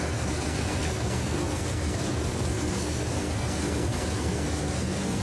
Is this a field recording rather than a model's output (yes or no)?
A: no